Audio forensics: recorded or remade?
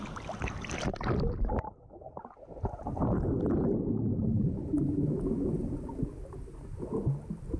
recorded